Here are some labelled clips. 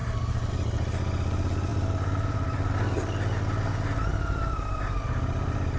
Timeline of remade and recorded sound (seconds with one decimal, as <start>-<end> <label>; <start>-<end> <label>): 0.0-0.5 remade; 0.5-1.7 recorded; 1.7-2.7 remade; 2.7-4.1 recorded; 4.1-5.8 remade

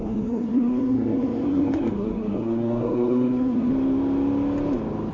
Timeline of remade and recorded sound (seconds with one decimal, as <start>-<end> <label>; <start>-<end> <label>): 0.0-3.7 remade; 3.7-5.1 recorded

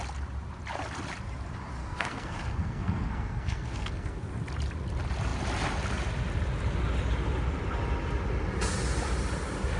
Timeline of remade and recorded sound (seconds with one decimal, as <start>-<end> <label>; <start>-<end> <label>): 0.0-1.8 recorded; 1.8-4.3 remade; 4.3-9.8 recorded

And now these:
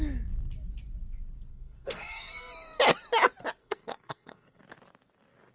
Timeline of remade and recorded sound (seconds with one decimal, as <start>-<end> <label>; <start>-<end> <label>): 0.0-1.5 recorded; 1.5-2.5 remade; 2.5-3.6 recorded; 3.6-4.6 remade; 4.6-5.5 recorded

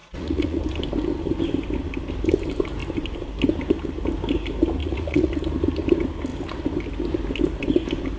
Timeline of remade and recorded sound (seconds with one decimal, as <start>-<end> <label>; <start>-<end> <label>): 0.0-0.6 remade; 0.6-4.8 recorded; 4.8-5.3 remade; 5.3-8.2 recorded